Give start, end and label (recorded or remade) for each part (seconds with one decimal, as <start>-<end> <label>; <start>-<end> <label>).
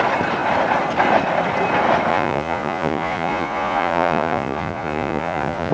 0.0-2.1 recorded; 2.1-5.7 remade